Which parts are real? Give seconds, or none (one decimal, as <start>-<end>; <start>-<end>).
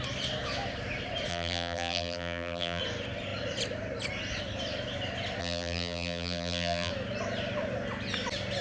0.0-1.3; 2.8-5.4; 6.9-8.6